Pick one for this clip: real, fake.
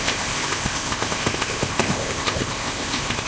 fake